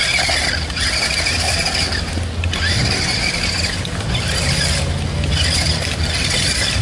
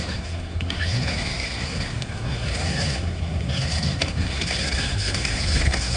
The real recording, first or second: first